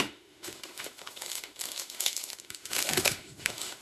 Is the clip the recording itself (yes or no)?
no